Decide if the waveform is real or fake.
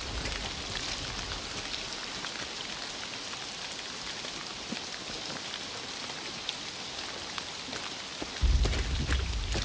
real